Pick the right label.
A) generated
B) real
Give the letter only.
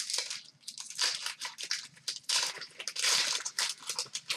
B